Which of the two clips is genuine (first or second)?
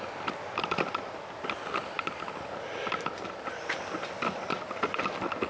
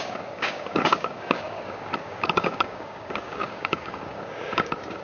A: first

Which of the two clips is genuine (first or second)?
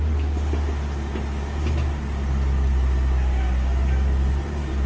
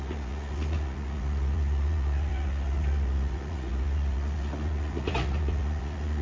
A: first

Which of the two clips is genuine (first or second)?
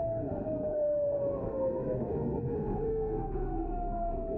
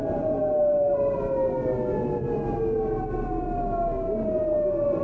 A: second